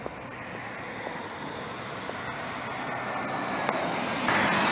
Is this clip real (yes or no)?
yes